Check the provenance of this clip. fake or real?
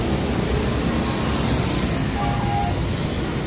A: real